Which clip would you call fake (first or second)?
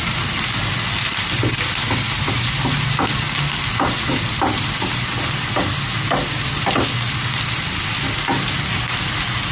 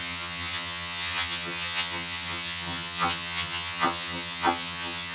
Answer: second